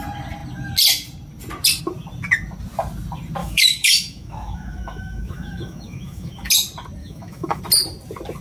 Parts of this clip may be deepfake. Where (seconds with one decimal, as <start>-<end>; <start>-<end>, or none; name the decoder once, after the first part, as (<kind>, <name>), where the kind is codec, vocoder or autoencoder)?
3.4-6.5 (autoencoder, DAC-VAE); 7.0-7.6